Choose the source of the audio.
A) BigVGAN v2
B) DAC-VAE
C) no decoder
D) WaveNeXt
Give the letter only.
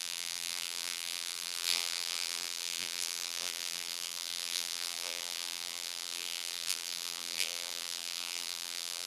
A